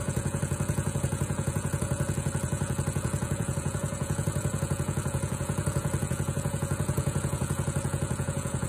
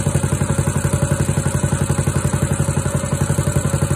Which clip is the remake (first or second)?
first